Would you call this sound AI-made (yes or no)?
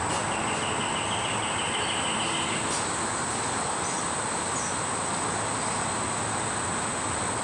no